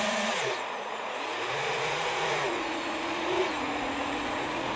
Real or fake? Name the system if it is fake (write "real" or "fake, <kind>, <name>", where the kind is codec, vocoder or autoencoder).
fake, vocoder, Vocos